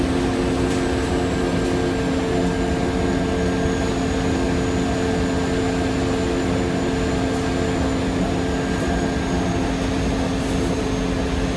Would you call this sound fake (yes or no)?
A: no